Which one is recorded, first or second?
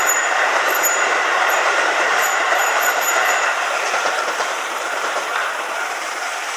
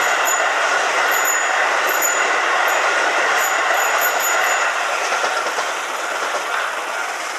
second